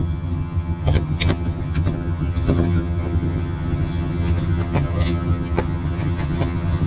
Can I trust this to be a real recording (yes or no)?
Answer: no